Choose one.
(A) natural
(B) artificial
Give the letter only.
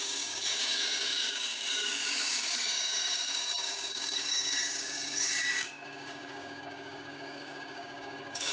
B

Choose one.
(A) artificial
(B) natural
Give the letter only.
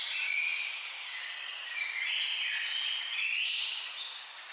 B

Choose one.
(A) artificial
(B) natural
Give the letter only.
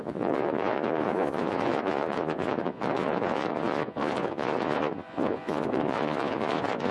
A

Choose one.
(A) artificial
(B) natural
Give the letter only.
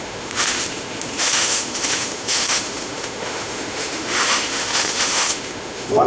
A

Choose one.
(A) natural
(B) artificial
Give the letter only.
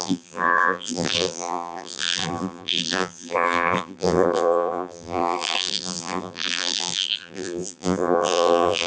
B